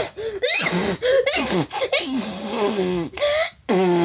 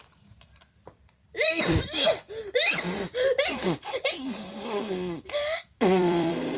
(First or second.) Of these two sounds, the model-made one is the second